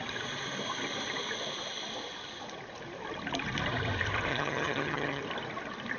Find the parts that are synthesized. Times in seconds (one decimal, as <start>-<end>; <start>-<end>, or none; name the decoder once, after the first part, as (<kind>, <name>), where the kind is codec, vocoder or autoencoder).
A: 4.3-5.2 (vocoder, HiFi-GAN)